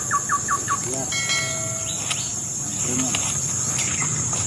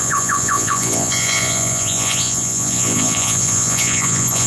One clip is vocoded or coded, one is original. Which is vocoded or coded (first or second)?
second